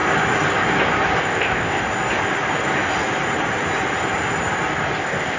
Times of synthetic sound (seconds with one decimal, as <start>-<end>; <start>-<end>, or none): 1.2-1.8; 5.0-5.4